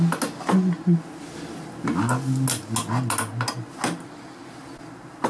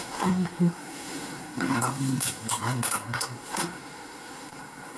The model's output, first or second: second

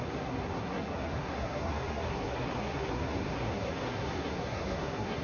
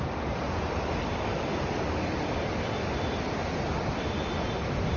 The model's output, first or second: first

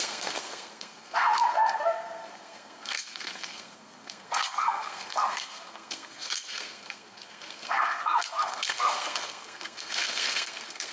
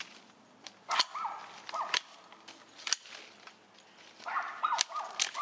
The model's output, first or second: first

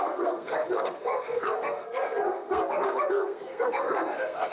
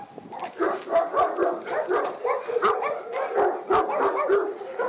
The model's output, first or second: first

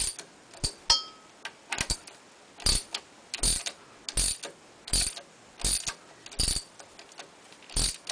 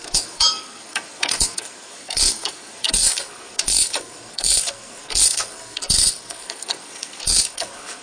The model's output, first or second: second